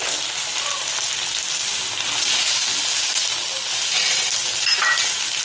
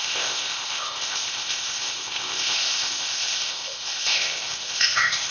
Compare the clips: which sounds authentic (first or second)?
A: first